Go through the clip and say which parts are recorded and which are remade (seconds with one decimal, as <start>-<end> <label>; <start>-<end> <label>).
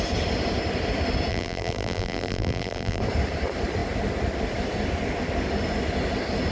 0.0-1.3 recorded; 1.3-3.0 remade; 3.0-6.5 recorded